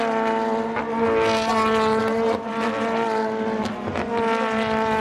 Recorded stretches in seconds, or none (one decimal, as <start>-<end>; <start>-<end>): 0.0-2.0; 2.5-5.0